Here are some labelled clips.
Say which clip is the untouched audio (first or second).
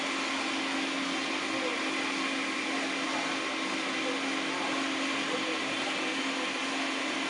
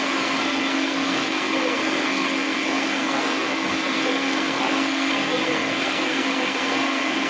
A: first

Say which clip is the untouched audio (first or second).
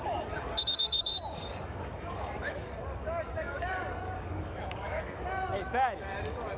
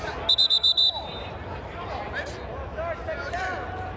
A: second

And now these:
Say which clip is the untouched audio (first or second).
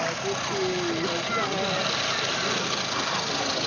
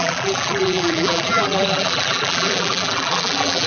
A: first